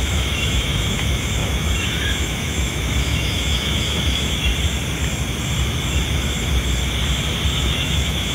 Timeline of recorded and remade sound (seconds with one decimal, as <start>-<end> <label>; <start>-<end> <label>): 0.0-4.5 remade; 4.5-7.5 recorded; 7.5-8.3 remade